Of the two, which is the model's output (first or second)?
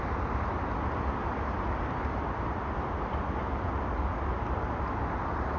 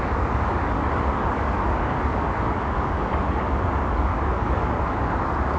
second